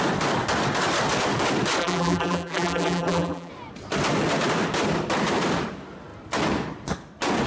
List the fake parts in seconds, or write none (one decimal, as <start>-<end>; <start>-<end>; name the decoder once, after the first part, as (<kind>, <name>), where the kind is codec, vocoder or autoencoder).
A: 1.8-3.5 (vocoder, BigVGAN v2)